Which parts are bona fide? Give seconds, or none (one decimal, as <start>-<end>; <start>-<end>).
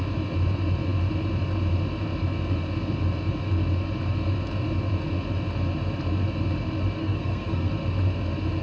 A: 0.0-7.0; 7.7-8.6